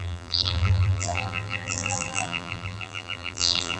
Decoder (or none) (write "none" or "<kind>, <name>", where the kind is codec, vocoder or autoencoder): vocoder, BigVGAN v2